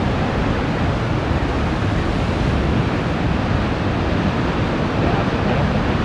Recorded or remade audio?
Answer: recorded